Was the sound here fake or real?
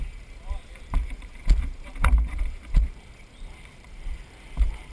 fake